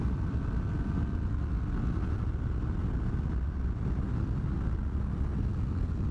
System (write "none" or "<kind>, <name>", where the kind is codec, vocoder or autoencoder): none